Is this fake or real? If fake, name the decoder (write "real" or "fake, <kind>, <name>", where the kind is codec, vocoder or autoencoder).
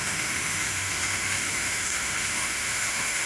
fake, autoencoder, DAC-VAE